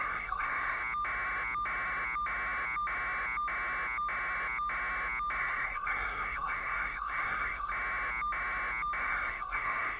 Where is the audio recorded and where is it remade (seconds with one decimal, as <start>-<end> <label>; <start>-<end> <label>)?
0.0-0.8 remade; 0.8-5.4 recorded; 5.4-7.7 remade; 7.7-9.0 recorded; 9.0-10.0 remade